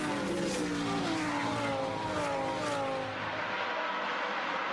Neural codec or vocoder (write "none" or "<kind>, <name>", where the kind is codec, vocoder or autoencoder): none